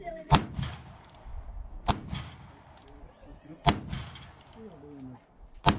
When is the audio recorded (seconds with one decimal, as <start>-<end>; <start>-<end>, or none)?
1.3-1.9; 3.5-5.8